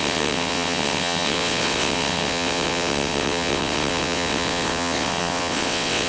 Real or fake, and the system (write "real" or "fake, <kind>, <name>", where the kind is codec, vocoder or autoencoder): fake, vocoder, WaveNeXt